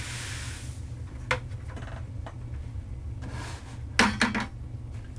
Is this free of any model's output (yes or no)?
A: yes